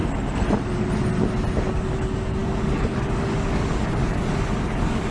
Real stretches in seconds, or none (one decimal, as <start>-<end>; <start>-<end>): 0.0-1.7